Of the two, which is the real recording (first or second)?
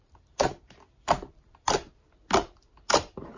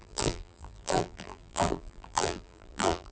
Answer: first